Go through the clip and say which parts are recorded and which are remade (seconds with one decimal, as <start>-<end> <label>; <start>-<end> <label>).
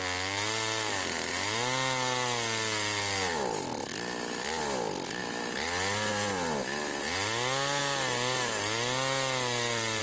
0.0-10.0 recorded